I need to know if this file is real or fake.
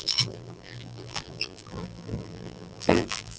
fake